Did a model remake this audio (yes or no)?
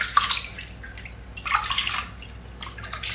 no